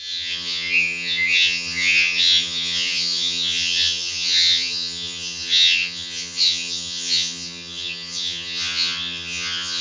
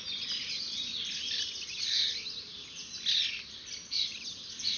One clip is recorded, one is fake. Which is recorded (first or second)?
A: second